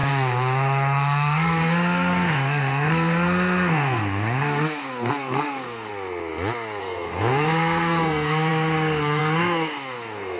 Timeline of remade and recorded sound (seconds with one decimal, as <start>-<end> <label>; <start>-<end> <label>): 0.0-5.9 remade; 5.9-6.8 recorded; 6.8-10.4 remade